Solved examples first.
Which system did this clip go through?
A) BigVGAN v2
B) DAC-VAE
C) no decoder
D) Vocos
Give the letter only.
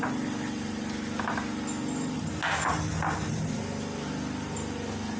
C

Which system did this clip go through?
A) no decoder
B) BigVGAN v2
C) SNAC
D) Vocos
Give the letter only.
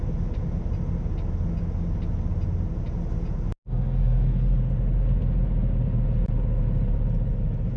A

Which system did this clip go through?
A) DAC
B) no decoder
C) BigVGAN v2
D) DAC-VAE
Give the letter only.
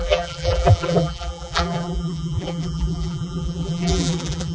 C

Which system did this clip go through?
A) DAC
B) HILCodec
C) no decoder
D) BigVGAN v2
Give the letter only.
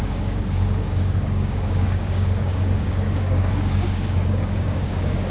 A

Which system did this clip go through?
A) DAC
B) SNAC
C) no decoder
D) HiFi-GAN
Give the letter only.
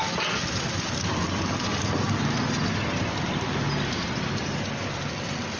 C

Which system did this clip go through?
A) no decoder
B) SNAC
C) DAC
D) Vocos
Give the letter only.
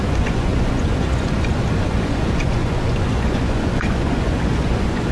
D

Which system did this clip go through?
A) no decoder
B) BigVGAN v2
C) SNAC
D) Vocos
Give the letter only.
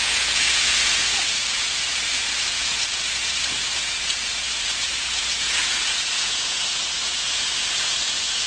D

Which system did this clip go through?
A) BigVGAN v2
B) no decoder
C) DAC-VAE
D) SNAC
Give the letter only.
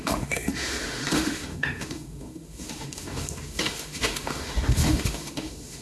C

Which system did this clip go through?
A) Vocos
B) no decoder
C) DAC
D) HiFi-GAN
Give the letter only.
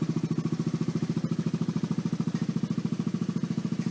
B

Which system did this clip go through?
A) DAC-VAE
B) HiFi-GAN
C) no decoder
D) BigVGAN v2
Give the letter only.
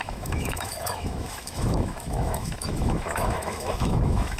A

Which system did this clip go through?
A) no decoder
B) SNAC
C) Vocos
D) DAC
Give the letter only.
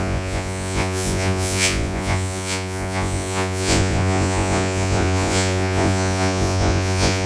C